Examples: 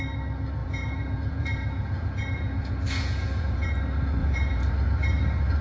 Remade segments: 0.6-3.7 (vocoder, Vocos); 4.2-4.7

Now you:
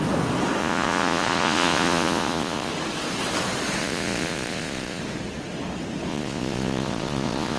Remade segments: 0.6-2.7 (vocoder, Vocos); 3.8-5.0; 6.1-7.6